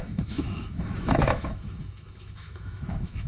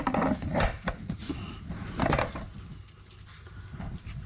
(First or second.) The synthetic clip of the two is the first